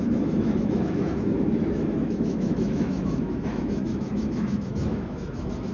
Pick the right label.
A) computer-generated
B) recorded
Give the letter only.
A